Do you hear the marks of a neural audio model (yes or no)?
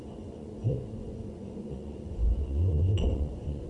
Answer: yes